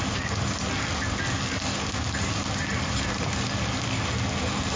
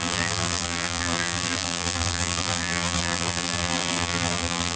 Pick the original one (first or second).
first